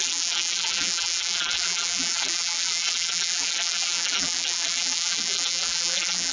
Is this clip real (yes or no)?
no